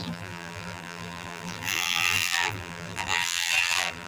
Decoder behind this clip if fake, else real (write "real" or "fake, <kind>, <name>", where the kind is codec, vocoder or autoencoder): fake, vocoder, BigVGAN v2